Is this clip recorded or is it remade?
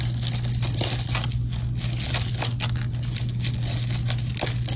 recorded